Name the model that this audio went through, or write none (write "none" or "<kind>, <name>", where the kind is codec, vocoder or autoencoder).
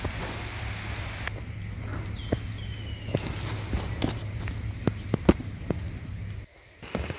none